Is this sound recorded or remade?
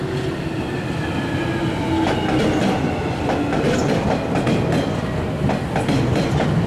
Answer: recorded